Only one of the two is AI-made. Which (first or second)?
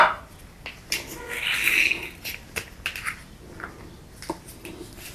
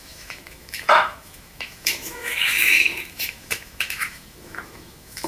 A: second